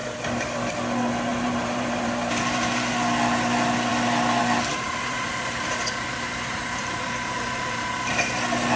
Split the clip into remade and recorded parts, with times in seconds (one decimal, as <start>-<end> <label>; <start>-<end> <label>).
0.0-1.3 recorded; 1.3-2.9 remade; 2.9-5.1 recorded; 5.1-8.1 remade; 8.1-8.8 recorded